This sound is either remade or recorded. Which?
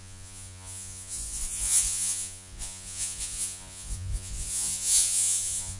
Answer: remade